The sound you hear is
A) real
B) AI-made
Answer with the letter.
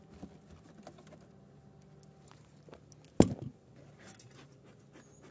A